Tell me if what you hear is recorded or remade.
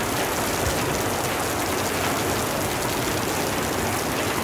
recorded